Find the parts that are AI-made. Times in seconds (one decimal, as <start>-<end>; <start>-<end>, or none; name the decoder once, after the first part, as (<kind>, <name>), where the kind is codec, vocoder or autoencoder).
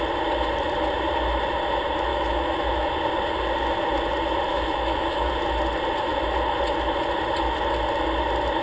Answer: 2.1-2.9 (autoencoder, DAC-VAE); 4.5-5.3